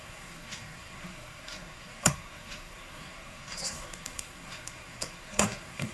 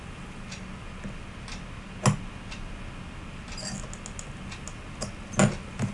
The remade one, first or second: first